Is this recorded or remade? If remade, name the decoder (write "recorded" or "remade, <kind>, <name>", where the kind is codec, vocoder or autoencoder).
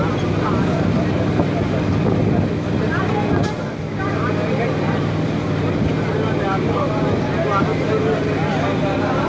recorded